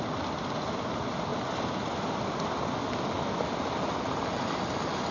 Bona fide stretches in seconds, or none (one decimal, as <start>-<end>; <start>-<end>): 0.0-5.1